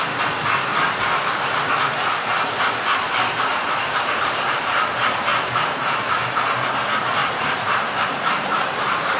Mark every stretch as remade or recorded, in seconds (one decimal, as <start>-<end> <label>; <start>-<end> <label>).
0.0-0.7 recorded; 0.7-1.7 remade; 1.7-3.5 recorded; 3.5-4.6 remade; 4.6-5.3 recorded; 5.3-6.4 remade; 6.4-7.2 recorded; 7.2-9.2 remade